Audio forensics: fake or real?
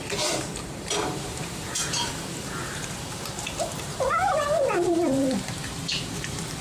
fake